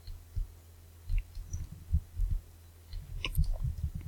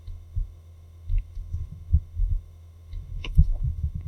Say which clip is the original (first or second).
first